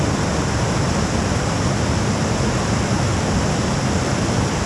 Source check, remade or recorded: recorded